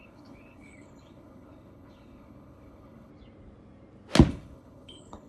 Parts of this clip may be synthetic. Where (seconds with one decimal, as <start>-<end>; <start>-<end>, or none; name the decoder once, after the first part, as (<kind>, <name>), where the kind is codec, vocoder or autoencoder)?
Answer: 0.0-3.1 (codec, HILCodec); 4.3-5.3

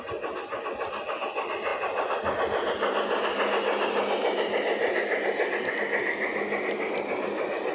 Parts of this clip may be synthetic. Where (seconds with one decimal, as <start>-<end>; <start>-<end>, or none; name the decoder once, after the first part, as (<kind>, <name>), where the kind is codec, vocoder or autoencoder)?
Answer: none